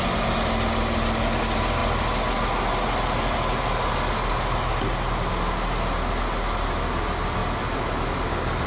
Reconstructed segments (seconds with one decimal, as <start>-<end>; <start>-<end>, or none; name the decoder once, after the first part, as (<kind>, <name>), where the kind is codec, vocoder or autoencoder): none